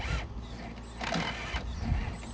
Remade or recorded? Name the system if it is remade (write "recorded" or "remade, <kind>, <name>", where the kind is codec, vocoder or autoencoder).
recorded